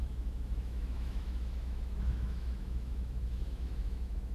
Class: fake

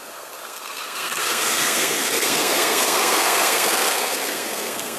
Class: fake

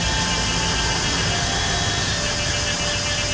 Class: real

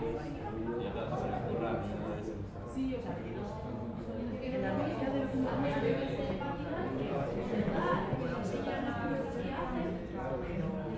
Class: real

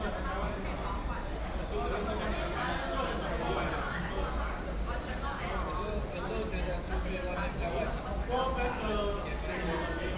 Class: real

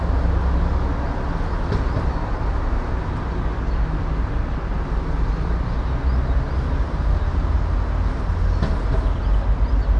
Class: real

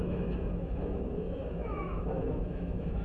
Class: fake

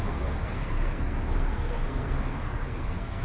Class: fake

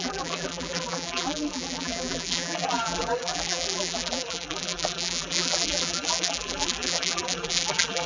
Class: fake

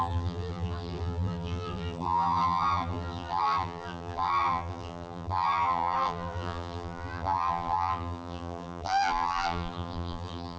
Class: fake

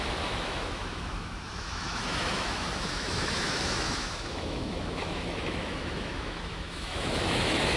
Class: fake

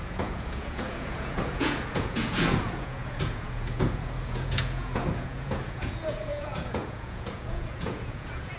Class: fake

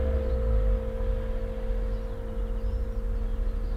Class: real